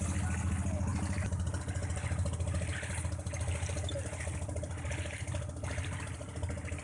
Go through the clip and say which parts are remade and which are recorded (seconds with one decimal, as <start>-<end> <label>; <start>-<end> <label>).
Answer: 0.0-6.8 recorded